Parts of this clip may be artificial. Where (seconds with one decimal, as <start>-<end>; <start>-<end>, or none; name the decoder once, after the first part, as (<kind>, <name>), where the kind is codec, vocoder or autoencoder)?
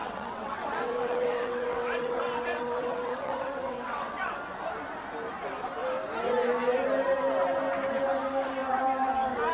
0.0-4.3 (vocoder, WaveNeXt)